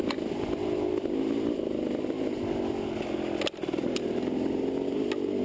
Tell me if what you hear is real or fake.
real